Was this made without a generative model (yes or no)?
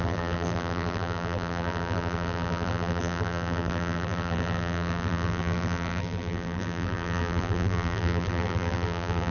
no